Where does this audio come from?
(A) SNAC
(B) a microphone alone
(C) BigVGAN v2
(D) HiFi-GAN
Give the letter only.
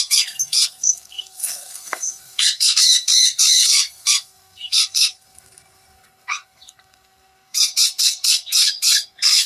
A